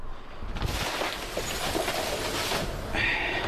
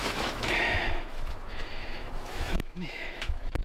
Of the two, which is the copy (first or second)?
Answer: second